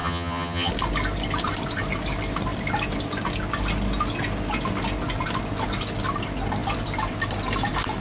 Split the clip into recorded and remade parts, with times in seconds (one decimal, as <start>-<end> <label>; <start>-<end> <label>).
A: 0.0-0.7 remade; 0.7-8.0 recorded